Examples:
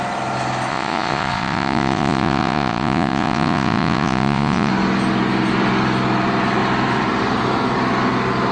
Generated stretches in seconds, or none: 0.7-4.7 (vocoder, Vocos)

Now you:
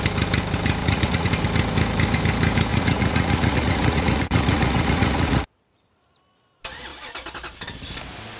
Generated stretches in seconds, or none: 0.8-1.3 (vocoder, Vocos); 2.7-6.0

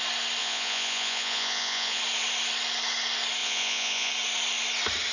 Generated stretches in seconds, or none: 0.4-2.0 (vocoder, Vocos); 3.4-4.1

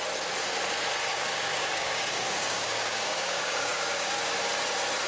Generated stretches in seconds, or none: 1.1-4.2 (codec, DAC)

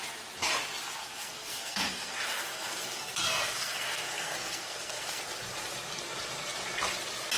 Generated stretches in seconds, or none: 1.0-5.2 (codec, SNAC)